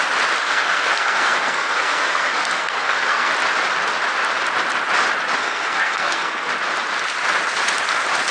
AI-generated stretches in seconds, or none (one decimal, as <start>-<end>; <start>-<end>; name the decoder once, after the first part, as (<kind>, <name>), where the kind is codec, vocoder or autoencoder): 0.4-3.3 (codec, SNAC); 5.4-6.5